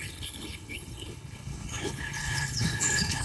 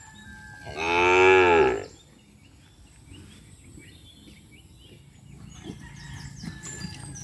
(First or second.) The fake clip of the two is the first